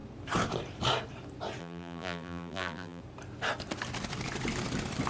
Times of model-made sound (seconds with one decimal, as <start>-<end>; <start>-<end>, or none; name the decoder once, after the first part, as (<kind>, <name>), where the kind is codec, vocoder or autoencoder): 1.6-3.0 (vocoder, BigVGAN v2)